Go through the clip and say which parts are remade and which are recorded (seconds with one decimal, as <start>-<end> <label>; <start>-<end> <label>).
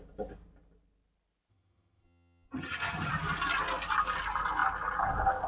0.0-1.5 recorded; 1.5-3.1 remade; 3.1-5.5 recorded